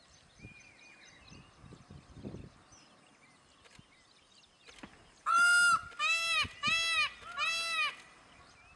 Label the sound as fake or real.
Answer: real